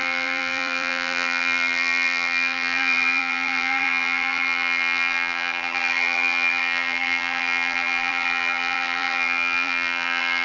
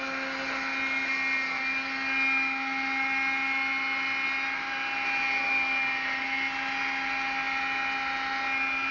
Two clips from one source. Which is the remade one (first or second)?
first